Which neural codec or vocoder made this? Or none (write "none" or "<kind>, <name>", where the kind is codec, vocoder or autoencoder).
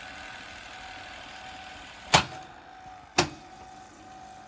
none